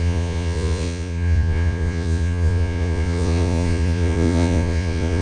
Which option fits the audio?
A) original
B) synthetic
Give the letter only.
B